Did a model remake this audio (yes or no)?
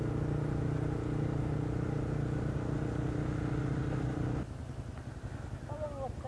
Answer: no